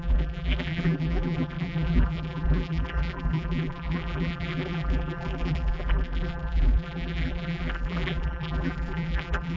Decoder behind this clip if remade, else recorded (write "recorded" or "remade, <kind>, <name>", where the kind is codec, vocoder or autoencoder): remade, vocoder, BigVGAN v2